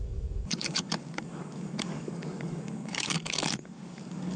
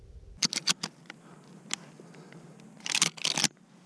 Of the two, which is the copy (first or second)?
first